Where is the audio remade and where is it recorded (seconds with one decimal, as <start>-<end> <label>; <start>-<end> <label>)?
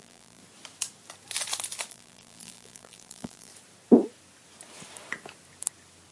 0.0-0.4 remade; 0.4-1.9 recorded; 1.9-3.5 remade; 3.5-6.1 recorded